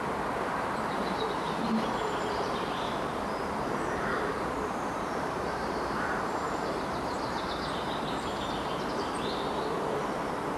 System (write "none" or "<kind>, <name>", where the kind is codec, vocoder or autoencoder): vocoder, BigVGAN v2